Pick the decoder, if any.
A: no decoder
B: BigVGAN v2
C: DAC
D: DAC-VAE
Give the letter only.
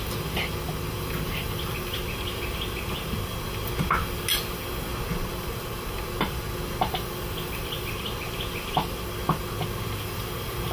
A